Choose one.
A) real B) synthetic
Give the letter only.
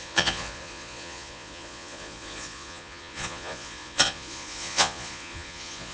B